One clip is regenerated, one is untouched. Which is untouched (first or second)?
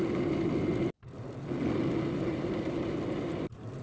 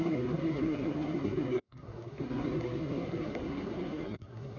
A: first